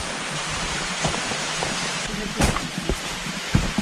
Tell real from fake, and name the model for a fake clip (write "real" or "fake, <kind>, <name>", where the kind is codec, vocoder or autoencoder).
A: fake, vocoder, BigVGAN v2